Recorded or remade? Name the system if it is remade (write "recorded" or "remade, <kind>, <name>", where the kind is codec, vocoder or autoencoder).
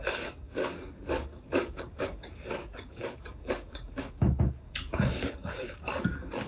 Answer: remade, codec, DAC